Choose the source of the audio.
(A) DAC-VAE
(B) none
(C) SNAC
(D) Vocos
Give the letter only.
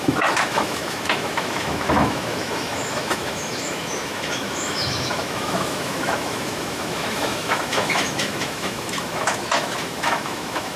A